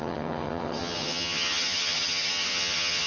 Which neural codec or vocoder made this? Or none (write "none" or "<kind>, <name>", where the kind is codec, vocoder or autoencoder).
vocoder, HiFi-GAN